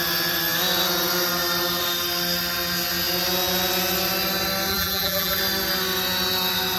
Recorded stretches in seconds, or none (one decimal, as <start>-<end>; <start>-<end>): 0.0-4.7; 5.4-6.8